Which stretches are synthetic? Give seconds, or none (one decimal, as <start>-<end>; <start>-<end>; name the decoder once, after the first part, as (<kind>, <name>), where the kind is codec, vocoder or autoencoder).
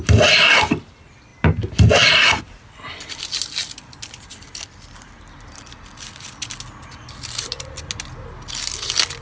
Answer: none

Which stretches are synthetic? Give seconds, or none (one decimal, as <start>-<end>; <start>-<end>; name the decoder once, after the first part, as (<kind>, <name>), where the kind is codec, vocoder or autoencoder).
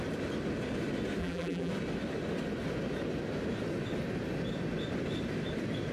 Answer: 1.2-1.7 (vocoder, BigVGAN v2)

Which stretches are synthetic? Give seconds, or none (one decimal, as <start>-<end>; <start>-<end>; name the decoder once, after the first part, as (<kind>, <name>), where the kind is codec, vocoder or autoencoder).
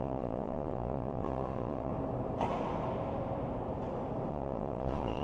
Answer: 0.0-1.9 (vocoder, Vocos); 4.3-5.2